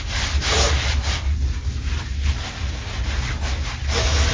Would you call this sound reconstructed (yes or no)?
no